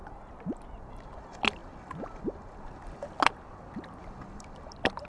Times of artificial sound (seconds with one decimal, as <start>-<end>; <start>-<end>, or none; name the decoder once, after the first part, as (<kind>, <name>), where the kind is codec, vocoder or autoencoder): 0.8-1.6 (vocoder, BigVGAN v2); 3.3-5.1